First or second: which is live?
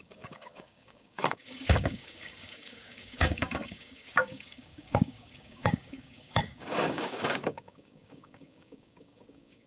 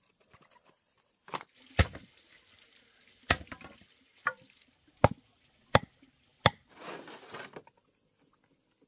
second